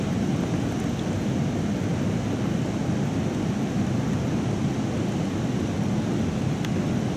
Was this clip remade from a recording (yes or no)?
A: no